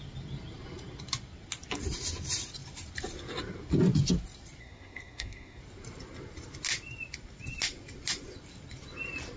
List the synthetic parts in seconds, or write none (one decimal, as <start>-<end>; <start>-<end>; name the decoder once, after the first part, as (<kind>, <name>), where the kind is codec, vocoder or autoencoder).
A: 4.6-5.6 (codec, SNAC)